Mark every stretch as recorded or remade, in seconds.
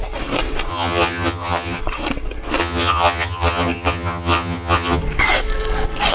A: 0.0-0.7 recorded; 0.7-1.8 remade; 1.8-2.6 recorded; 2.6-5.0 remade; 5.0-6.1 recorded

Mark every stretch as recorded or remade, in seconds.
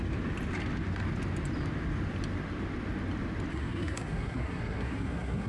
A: 0.0-3.5 recorded; 3.5-5.5 remade